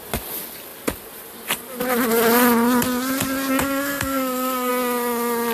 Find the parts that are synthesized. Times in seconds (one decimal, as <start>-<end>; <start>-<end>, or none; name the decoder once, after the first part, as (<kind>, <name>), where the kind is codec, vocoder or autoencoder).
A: 3.6-4.7 (codec, SNAC)